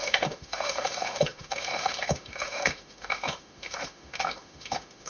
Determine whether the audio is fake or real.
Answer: fake